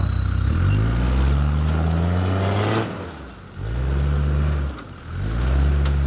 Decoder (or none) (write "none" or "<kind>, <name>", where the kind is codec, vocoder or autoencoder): none